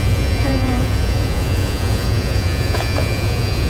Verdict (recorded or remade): remade